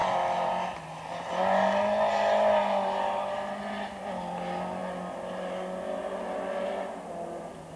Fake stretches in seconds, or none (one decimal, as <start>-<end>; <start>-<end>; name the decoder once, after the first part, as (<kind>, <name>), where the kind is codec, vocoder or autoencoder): none